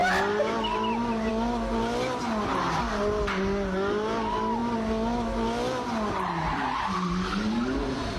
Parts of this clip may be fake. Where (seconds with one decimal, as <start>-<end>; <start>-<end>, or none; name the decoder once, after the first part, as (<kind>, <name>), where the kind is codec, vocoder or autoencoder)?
none